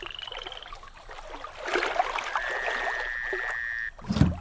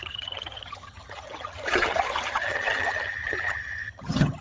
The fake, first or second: second